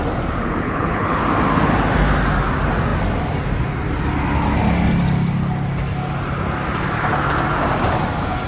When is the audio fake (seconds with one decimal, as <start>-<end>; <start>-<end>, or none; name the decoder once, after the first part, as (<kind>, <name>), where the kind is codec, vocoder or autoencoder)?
0.6-1.2 (codec, HILCodec)